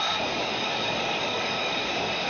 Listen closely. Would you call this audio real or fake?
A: fake